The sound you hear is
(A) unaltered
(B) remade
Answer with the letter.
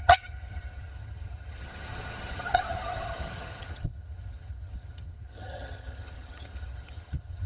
B